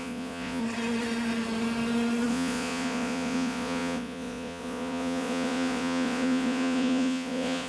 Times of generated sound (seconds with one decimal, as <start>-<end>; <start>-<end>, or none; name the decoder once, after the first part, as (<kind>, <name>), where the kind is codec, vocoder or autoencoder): 0.0-0.6 (vocoder, Vocos); 2.3-7.7